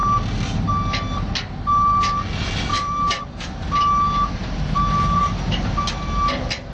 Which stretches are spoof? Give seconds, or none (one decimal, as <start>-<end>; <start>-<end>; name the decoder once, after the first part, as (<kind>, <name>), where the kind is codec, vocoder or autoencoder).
2.7-3.2 (vocoder, BigVGAN v2); 4.4-5.2